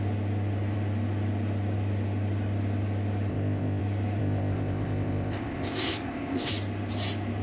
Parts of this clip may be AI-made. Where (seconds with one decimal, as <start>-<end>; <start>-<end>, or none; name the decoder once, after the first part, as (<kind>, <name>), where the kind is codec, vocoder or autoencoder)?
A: 3.3-3.8 (codec, ZipCodec); 4.2-6.5